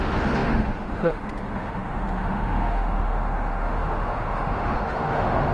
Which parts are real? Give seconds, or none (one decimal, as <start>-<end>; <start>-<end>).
none